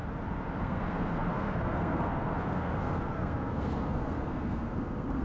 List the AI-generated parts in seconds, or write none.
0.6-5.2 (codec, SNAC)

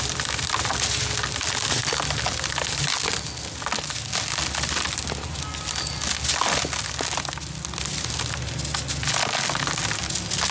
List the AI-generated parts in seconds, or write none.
none

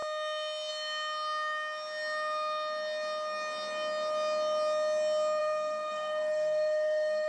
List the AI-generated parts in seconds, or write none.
5.4-7.3 (codec, SNAC)

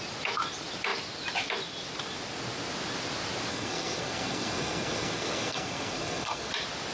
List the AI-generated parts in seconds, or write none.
3.5-6.5 (codec, SNAC)